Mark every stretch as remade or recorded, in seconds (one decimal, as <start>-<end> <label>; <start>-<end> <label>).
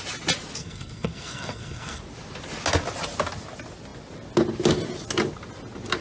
0.0-0.6 recorded; 0.6-2.0 remade; 2.0-6.0 recorded